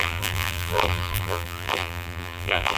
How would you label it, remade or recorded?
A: remade